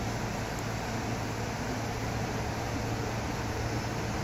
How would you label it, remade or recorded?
recorded